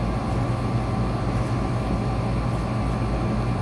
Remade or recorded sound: recorded